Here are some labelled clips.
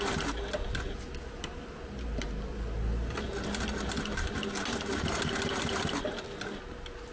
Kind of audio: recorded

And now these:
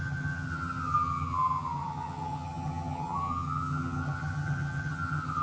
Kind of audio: remade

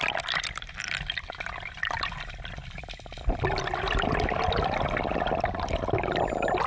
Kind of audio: recorded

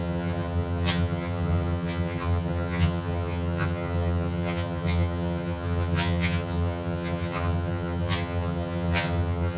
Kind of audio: remade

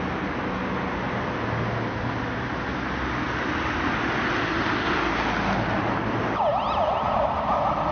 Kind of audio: recorded